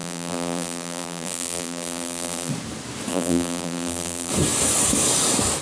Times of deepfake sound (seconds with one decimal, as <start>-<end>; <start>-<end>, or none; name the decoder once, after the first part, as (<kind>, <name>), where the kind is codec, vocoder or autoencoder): 0.0-2.5 (vocoder, BigVGAN v2); 3.1-4.3